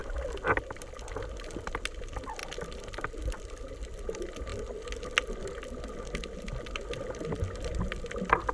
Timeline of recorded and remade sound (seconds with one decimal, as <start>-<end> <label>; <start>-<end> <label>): 0.0-8.5 recorded